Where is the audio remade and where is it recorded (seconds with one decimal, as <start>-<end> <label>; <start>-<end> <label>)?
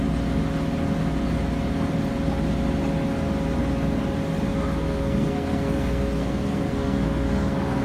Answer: 0.0-4.5 recorded; 4.5-7.8 remade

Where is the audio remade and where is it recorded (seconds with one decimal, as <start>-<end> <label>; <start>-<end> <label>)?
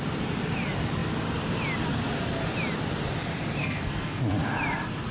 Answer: 0.0-3.6 recorded; 3.6-4.2 remade; 4.2-5.1 recorded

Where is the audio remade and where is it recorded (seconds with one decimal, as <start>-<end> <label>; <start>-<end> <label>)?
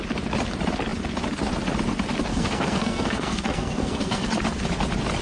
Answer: 0.0-2.3 recorded; 2.3-4.3 remade; 4.3-5.2 recorded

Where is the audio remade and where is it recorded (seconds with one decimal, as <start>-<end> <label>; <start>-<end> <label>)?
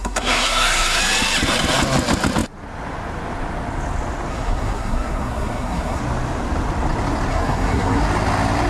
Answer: 0.0-1.0 remade; 1.0-4.3 recorded; 4.3-6.0 remade; 6.0-7.3 recorded; 7.3-8.0 remade; 8.0-8.7 recorded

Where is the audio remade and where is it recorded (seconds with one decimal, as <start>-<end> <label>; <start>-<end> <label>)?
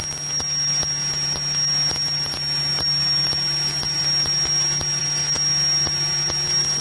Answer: 0.0-6.8 recorded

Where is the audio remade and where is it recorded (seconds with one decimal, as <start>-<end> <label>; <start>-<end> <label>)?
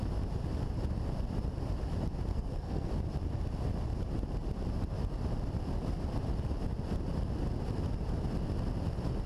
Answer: 0.0-2.3 recorded; 2.3-2.9 remade; 2.9-9.3 recorded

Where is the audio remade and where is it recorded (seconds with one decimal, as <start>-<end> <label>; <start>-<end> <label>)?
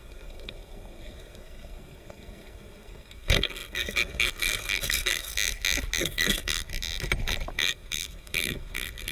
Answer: 0.0-5.3 remade; 5.3-6.0 recorded; 6.0-6.7 remade; 6.7-7.5 recorded; 7.5-9.1 remade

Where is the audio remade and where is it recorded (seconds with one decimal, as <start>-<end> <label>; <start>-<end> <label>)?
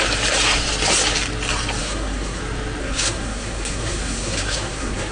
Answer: 0.0-1.8 recorded; 1.8-2.4 remade; 2.4-2.8 recorded; 2.8-5.1 remade